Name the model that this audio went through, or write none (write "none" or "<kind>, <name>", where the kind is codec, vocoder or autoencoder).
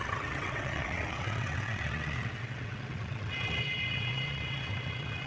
vocoder, WaveNeXt